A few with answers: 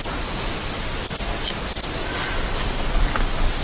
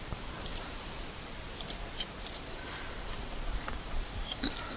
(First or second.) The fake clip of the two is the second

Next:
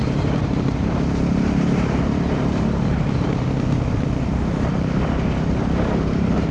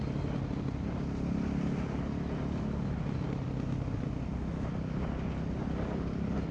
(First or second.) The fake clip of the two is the first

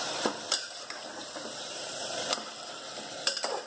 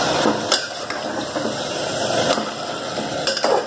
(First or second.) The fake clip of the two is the first